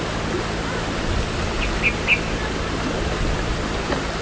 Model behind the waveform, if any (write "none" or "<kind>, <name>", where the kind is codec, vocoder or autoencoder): none